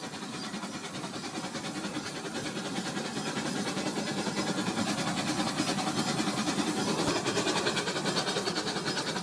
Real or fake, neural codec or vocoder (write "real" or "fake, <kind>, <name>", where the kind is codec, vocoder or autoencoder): real